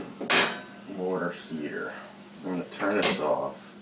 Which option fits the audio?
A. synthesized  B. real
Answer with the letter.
B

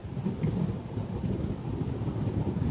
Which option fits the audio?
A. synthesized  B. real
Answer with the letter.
B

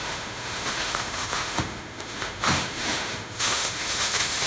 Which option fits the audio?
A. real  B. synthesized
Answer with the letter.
B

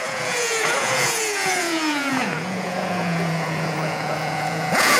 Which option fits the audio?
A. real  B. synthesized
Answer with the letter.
B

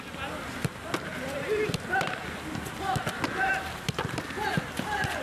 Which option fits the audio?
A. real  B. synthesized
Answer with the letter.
A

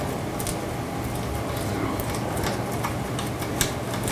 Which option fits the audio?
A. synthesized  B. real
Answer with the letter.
B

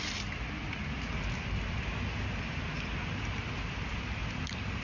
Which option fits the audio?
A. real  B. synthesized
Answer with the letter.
A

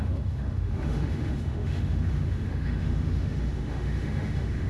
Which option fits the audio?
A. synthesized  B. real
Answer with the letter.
A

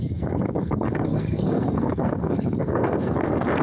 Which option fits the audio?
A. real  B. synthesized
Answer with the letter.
B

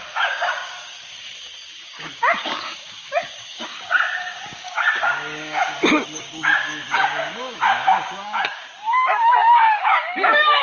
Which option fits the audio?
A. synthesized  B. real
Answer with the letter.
A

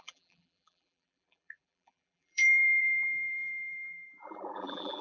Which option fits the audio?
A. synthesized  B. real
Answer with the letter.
A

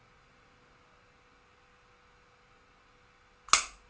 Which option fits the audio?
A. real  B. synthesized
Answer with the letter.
A